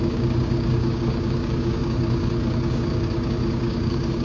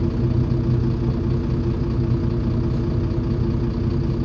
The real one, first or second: second